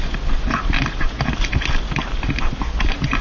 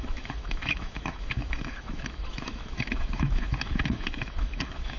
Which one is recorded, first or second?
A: first